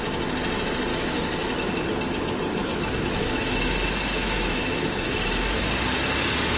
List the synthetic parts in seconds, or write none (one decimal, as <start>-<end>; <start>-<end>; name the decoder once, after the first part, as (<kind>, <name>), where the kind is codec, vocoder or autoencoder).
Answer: 0.9-1.7 (autoencoder, DAC-VAE); 2.7-5.6